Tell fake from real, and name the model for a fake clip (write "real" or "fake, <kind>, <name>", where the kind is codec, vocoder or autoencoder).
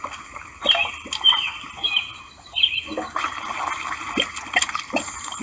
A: real